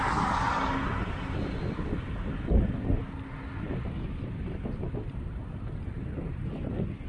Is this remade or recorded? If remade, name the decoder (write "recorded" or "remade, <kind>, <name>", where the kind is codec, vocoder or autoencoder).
recorded